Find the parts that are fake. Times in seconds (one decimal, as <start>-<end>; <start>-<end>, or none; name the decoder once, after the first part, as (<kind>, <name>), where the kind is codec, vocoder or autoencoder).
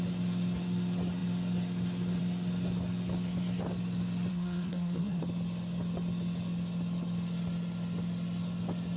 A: 4.3-5.2 (codec, SNAC)